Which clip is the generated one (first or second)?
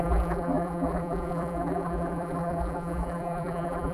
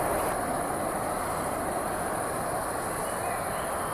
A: first